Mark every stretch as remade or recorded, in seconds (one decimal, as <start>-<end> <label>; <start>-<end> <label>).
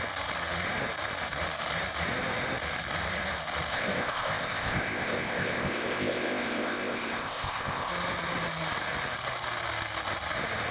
0.0-3.7 recorded; 3.7-7.9 remade; 7.9-10.7 recorded